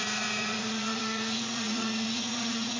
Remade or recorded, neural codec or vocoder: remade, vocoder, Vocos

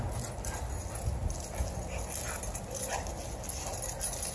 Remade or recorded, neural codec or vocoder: recorded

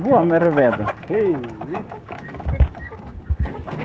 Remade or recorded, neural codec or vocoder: remade, codec, DAC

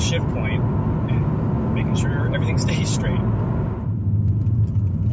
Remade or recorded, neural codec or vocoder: recorded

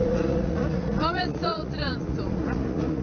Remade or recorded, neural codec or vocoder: remade, vocoder, Vocos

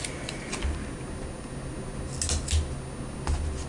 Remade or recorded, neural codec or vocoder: recorded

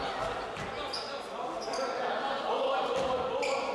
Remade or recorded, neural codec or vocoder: recorded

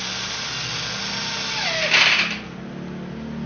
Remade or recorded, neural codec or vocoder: recorded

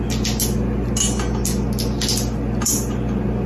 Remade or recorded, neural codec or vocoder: recorded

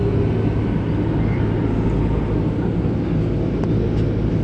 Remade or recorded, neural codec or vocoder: recorded